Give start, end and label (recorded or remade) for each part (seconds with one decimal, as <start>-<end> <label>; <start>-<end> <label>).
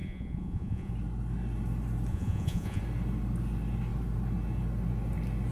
0.0-0.9 remade; 0.9-2.1 recorded; 2.1-2.8 remade; 2.8-5.5 recorded